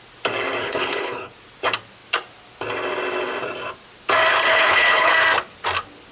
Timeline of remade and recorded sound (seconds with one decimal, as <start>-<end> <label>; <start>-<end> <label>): 0.0-0.6 recorded; 0.6-1.3 remade; 1.3-4.3 recorded; 4.3-5.1 remade; 5.1-6.1 recorded